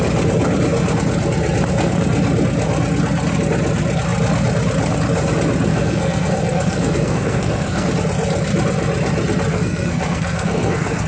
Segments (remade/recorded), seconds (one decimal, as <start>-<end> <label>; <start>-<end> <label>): 0.0-5.7 recorded; 5.7-7.9 remade; 7.9-9.5 recorded; 9.5-11.1 remade